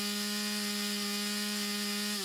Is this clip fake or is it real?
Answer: real